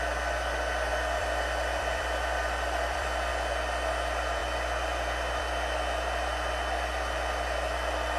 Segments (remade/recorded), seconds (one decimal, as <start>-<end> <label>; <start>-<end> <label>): 0.0-0.9 recorded; 0.9-3.3 remade; 3.3-8.2 recorded